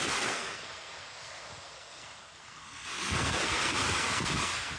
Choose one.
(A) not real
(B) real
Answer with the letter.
A